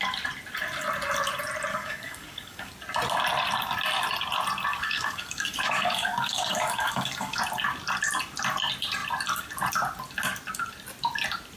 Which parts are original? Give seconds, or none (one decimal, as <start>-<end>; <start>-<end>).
0.0-1.7; 2.7-4.7; 7.4-11.6